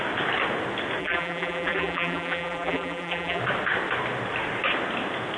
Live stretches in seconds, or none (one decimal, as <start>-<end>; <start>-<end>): 0.0-1.0; 3.4-5.4